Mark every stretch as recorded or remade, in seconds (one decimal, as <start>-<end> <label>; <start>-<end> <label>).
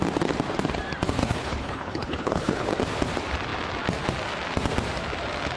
0.0-1.2 recorded; 1.2-2.7 remade; 2.7-5.6 recorded